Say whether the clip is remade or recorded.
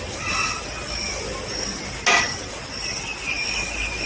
recorded